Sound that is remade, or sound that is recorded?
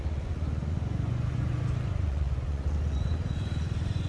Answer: remade